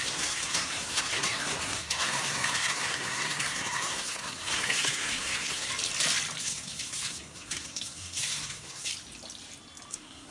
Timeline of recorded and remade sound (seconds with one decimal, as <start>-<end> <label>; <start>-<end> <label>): 0.0-5.7 remade; 5.7-6.4 recorded; 6.4-8.9 remade; 8.9-9.9 recorded; 9.9-10.3 remade